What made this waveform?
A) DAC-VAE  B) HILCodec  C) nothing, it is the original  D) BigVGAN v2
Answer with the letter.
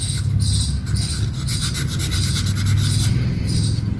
C